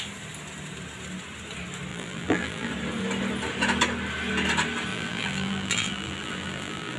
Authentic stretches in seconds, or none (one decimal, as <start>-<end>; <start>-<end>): 0.0-1.9; 2.7-4.9